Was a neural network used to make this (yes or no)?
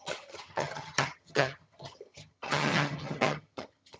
yes